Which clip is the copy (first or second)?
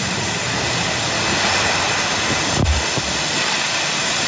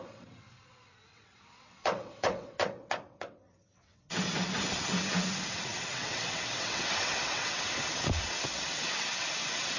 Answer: second